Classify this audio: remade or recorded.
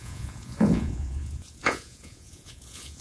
remade